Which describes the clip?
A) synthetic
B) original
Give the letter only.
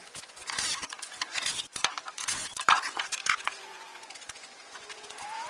A